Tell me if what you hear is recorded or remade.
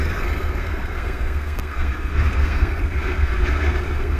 remade